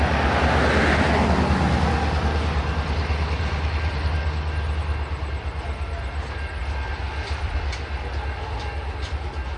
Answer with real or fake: real